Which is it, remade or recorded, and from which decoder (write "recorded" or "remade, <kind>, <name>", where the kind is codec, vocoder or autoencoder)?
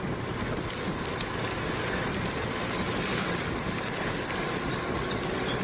recorded